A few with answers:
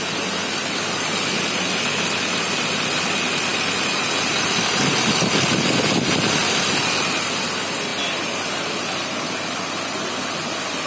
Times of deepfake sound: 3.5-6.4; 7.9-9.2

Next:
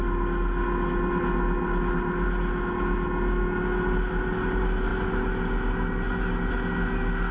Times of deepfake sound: none

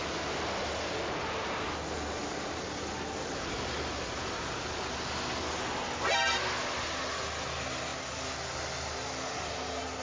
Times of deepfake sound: none